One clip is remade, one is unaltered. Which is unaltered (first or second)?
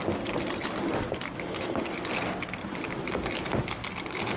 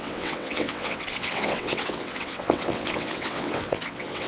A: first